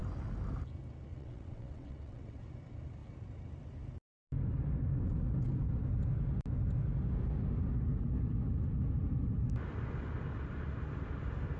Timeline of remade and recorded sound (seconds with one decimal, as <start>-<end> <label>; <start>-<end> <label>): 0.0-1.1 recorded; 1.1-2.4 remade; 2.4-11.6 recorded

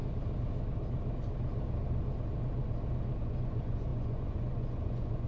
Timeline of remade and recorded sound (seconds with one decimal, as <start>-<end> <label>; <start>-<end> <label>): 0.0-3.2 recorded; 3.2-5.3 remade